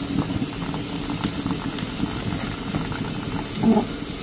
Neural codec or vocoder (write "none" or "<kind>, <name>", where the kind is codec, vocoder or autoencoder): none